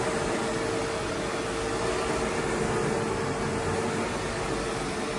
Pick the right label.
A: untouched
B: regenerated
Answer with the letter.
A